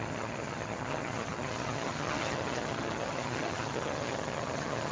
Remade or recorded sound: remade